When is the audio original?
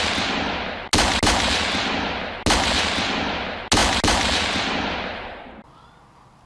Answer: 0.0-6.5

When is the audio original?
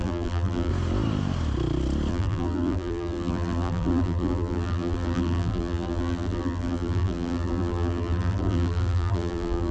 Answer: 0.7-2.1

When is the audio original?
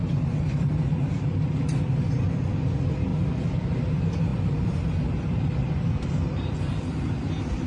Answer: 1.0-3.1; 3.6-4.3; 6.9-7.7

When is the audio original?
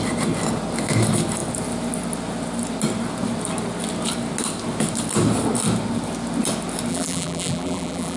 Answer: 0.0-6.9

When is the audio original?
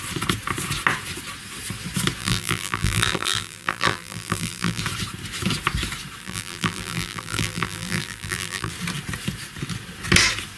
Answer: 0.0-2.2; 4.8-6.2; 8.7-10.6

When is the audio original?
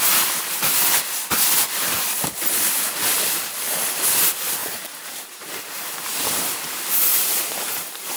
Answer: 0.0-4.6; 6.4-7.1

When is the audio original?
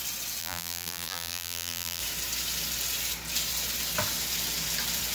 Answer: 0.0-0.4; 2.0-5.1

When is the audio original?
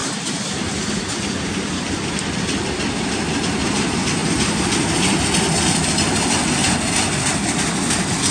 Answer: 2.1-4.2; 5.0-6.6; 7.2-8.3